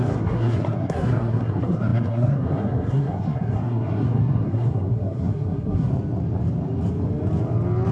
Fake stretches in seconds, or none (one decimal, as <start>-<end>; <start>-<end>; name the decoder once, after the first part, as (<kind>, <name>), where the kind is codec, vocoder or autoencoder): 0.0-5.9 (codec, SNAC)